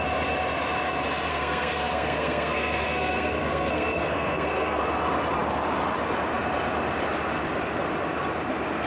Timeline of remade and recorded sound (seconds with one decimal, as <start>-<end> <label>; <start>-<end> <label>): 0.0-1.3 recorded; 1.3-4.8 remade; 4.8-8.9 recorded

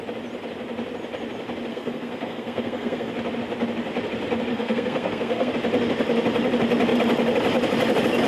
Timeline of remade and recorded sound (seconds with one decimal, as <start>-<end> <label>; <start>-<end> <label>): 0.0-1.7 recorded; 1.7-3.1 remade; 3.1-4.5 recorded; 4.5-5.5 remade; 5.5-8.3 recorded

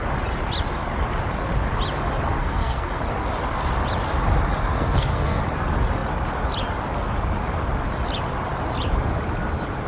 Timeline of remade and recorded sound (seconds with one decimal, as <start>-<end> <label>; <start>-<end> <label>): 0.0-2.4 recorded; 2.4-3.0 remade; 3.0-4.7 recorded; 4.7-5.4 remade; 5.4-9.9 recorded

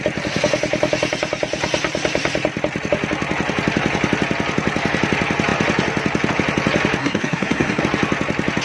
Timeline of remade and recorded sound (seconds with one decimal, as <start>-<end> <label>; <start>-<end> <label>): 0.0-7.0 recorded; 7.0-7.8 remade; 7.8-8.6 recorded

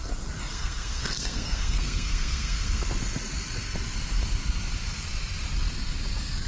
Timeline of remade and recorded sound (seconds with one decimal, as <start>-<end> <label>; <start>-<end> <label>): 0.0-0.5 recorded; 0.5-2.8 remade; 2.8-6.5 recorded

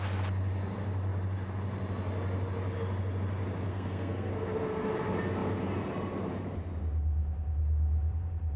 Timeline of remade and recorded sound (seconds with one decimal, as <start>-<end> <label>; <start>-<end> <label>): 0.0-3.7 recorded; 3.7-4.3 remade; 4.3-8.6 recorded

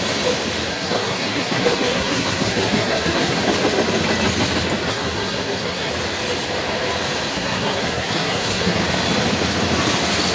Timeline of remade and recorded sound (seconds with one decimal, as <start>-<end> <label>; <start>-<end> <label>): 0.0-0.7 recorded; 0.7-3.4 remade; 3.4-4.9 recorded; 4.9-5.9 remade; 5.9-7.3 recorded; 7.3-8.8 remade; 8.8-10.3 recorded

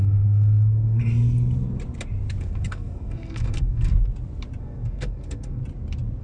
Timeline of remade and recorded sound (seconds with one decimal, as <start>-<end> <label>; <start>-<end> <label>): 0.0-1.0 remade; 1.0-2.4 recorded; 2.4-3.9 remade; 3.9-4.6 recorded; 4.6-5.6 remade; 5.6-6.2 recorded